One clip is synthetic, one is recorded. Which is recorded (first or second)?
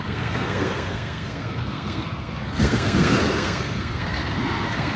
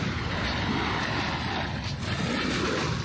second